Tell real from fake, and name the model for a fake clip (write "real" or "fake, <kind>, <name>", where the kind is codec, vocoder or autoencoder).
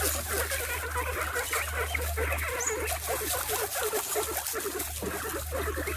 real